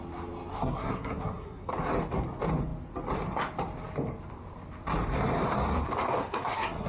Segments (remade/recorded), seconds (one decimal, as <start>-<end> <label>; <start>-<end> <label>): 0.0-0.5 recorded; 0.5-1.7 remade; 1.7-6.2 recorded; 6.2-6.9 remade